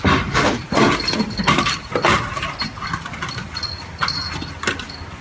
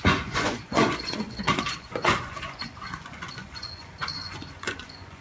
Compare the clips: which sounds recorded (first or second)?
first